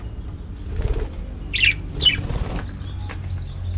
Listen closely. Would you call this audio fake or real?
real